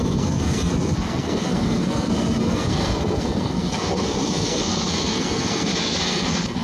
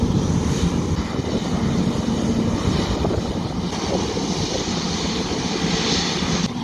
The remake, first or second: first